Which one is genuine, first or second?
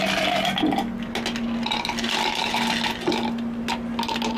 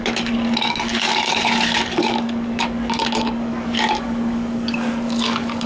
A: first